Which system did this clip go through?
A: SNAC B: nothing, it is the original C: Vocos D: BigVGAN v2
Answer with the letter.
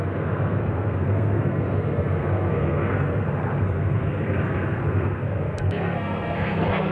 A